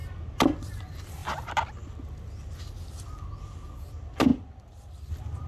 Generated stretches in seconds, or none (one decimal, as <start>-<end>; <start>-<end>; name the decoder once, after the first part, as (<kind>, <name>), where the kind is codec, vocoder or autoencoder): none